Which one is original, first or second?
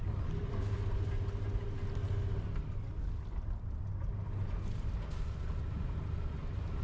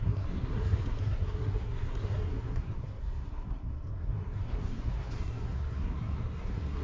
first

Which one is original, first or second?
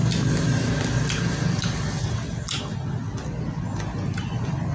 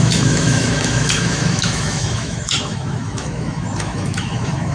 first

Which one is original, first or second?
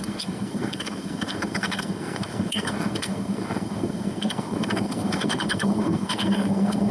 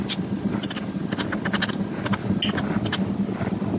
second